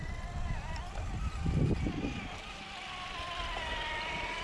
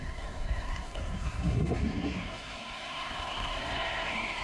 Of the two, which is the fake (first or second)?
second